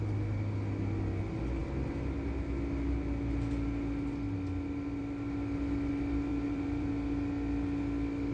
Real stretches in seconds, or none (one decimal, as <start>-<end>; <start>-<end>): 0.0-6.3; 6.9-8.3